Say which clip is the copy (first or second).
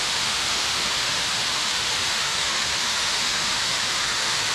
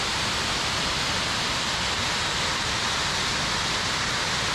first